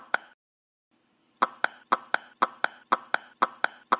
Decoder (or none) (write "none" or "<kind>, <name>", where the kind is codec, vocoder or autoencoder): none